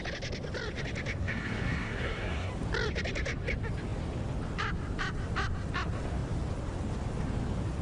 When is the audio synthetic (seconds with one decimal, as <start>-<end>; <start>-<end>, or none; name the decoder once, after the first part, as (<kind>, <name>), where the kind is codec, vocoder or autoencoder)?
1.2-2.5 (codec, SNAC)